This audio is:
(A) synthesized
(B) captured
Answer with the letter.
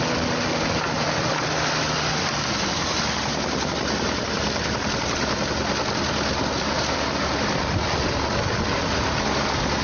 B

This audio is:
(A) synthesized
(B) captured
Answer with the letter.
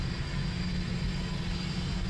B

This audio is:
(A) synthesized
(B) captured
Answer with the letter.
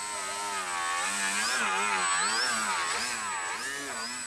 B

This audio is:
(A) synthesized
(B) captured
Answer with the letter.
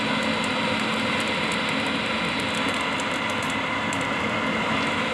B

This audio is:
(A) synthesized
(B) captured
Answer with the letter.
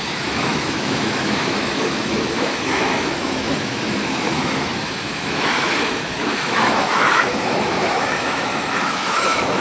A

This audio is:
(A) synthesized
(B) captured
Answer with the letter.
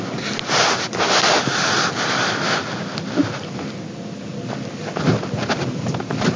B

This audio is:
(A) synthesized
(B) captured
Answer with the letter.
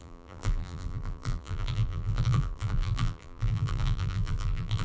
A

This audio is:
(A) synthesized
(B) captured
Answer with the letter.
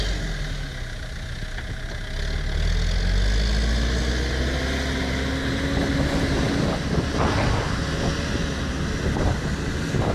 B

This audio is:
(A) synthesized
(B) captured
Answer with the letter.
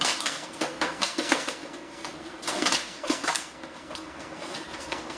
A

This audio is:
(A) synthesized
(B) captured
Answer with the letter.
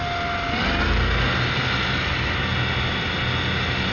B